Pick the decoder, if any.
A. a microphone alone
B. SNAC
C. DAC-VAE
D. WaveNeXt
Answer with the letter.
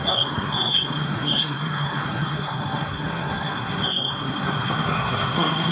B